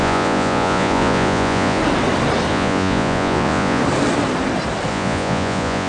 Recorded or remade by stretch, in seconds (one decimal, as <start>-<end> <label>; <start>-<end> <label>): 0.0-1.8 remade; 1.8-2.5 recorded; 2.5-3.8 remade; 3.8-4.9 recorded; 4.9-5.9 remade